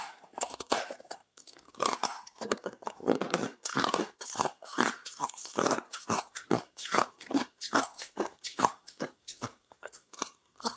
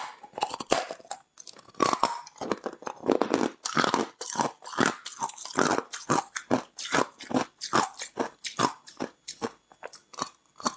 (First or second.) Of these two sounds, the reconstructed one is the first